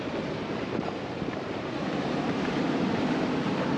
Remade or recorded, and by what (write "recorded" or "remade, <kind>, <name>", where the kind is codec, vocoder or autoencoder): remade, vocoder, BigVGAN v2